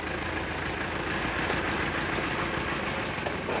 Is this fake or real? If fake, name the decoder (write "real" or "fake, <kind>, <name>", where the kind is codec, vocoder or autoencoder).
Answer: real